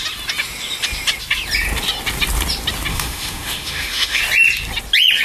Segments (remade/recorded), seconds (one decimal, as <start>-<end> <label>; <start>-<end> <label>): 0.0-2.9 recorded; 2.9-4.2 remade; 4.2-5.2 recorded